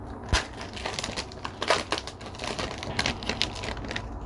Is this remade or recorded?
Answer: recorded